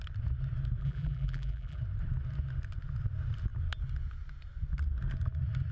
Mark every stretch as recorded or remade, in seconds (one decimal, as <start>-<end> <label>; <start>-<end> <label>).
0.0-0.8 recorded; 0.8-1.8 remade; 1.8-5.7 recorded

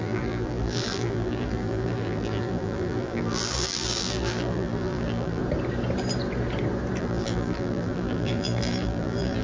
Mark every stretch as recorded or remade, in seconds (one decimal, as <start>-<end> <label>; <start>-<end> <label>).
0.0-5.4 remade; 5.4-7.0 recorded; 7.0-9.4 remade

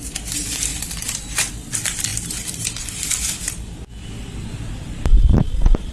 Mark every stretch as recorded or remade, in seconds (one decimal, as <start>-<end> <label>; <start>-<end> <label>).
0.0-5.9 remade

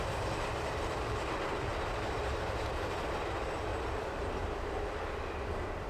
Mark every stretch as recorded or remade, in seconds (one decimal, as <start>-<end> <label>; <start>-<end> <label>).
0.0-3.7 remade; 3.7-5.9 recorded